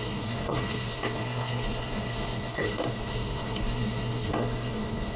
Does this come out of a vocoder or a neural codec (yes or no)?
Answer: yes